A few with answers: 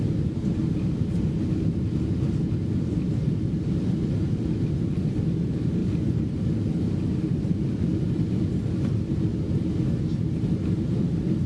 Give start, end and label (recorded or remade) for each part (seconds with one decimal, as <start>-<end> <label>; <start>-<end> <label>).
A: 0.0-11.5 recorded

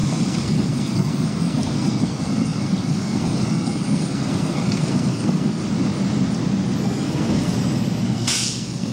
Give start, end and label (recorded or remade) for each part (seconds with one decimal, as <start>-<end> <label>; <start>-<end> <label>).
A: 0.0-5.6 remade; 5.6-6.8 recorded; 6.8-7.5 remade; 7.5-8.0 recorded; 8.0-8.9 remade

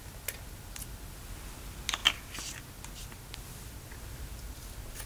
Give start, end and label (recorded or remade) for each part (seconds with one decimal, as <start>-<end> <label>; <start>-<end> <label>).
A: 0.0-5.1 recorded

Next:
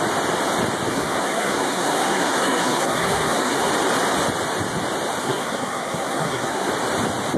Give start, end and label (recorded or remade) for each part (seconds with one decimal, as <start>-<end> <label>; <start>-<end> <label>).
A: 0.0-0.9 recorded; 0.9-3.7 remade; 3.7-5.2 recorded; 5.2-6.7 remade; 6.7-7.4 recorded

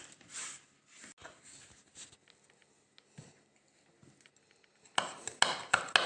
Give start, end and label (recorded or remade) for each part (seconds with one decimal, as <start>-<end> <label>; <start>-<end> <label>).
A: 0.0-6.1 recorded

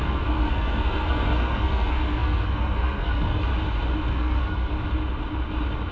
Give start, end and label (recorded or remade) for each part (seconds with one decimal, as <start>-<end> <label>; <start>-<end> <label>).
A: 0.0-3.5 remade; 3.5-4.1 recorded; 4.1-4.7 remade; 4.7-5.9 recorded

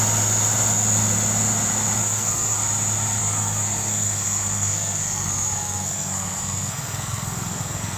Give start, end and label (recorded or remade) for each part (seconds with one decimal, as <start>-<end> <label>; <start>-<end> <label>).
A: 0.0-2.0 recorded; 2.0-2.6 remade; 2.6-3.2 recorded; 3.2-8.0 remade

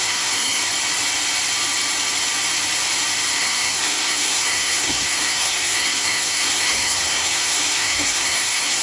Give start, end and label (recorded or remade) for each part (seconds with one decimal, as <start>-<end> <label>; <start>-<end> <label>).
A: 0.0-0.6 remade; 0.6-3.4 recorded; 3.4-8.8 remade